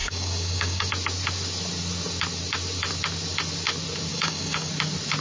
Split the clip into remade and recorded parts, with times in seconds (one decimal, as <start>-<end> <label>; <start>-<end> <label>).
0.0-0.9 remade; 0.9-4.1 recorded; 4.1-4.7 remade; 4.7-5.2 recorded